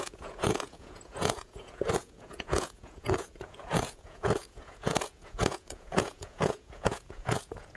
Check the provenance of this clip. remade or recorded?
remade